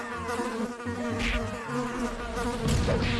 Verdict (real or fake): real